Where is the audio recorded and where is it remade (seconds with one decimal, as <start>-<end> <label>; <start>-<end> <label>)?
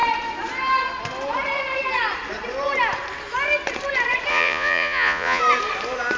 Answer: 0.0-4.3 recorded; 4.3-5.4 remade; 5.4-6.2 recorded